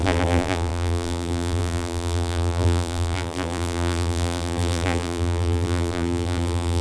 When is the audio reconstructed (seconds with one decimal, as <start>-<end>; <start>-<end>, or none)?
0.0-6.8